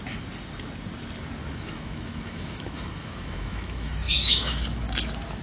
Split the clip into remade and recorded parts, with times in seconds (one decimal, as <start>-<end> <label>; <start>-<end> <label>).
0.0-1.4 recorded; 1.4-4.6 remade; 4.6-5.4 recorded